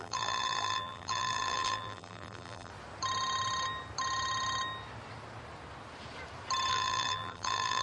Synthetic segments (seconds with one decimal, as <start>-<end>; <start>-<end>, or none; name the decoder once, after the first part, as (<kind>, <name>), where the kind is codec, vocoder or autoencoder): 0.0-2.7 (vocoder, BigVGAN v2); 6.7-7.8